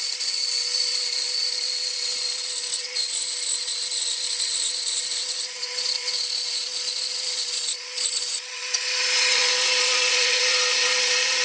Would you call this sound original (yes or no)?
no